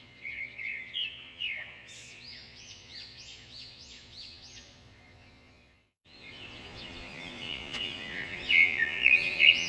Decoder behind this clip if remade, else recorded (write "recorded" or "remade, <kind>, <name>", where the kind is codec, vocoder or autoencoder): remade, vocoder, Vocos